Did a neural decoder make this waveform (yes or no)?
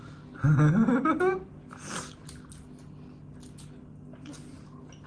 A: no